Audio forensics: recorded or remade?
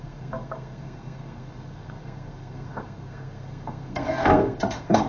remade